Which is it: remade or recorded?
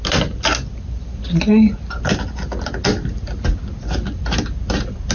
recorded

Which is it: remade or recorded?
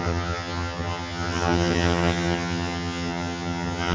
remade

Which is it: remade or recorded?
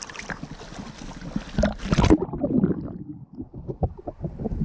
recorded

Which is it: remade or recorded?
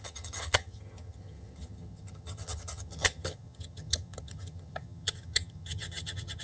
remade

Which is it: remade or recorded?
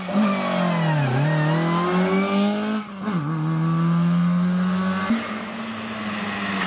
recorded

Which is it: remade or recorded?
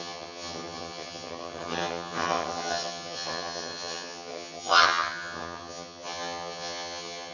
remade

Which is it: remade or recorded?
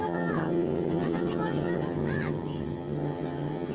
remade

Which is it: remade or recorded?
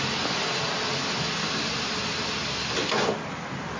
recorded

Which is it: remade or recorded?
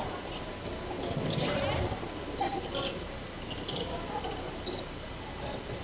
recorded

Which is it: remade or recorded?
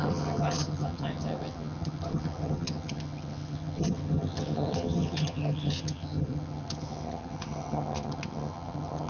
remade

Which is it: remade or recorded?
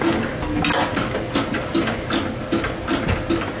recorded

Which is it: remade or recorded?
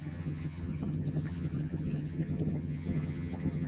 remade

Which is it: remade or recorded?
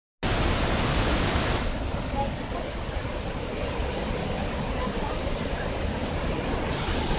recorded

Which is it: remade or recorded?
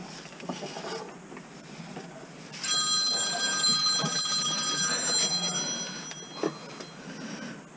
recorded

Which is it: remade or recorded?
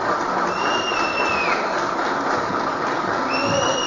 recorded